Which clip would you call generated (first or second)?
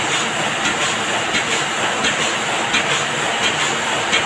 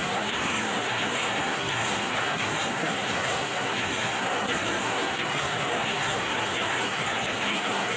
second